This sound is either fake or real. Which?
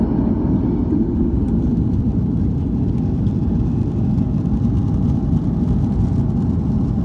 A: real